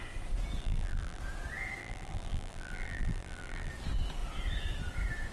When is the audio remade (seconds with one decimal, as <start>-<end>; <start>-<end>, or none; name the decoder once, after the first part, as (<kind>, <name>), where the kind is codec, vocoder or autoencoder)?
0.6-1.2 (vocoder, BigVGAN v2); 1.8-3.7